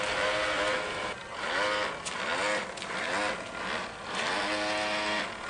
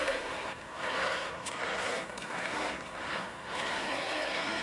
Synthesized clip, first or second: second